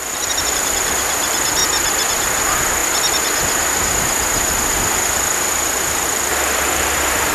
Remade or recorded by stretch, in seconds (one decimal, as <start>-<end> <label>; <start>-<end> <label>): 0.0-1.6 remade; 1.6-2.1 recorded; 2.1-2.8 remade; 2.8-5.0 recorded; 5.0-7.3 remade